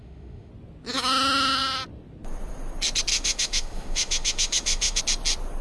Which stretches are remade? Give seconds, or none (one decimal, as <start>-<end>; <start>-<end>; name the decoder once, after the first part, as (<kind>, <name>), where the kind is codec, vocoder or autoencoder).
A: 0.0-0.5 (autoencoder, DAC-VAE); 3.1-5.0